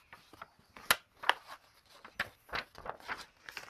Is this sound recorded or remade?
recorded